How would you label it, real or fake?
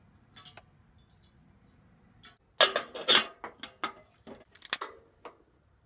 real